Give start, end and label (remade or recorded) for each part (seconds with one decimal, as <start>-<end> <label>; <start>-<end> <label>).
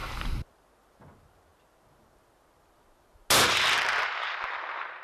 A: 0.0-5.0 recorded